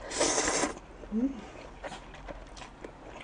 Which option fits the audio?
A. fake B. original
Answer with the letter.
B